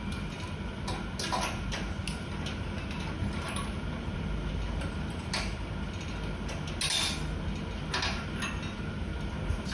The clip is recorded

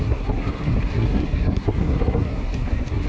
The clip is remade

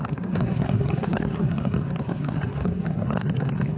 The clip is remade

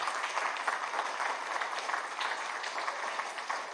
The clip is recorded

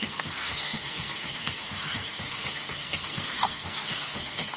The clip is remade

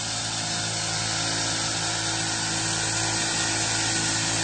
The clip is recorded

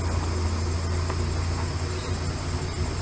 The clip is recorded